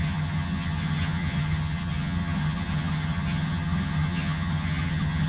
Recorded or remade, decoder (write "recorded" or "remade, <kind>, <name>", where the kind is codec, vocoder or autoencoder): remade, vocoder, HiFi-GAN